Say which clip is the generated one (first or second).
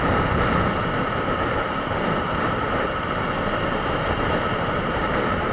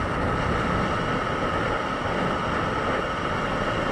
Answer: first